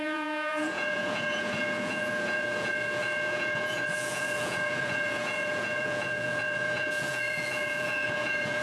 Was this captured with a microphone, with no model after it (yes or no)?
no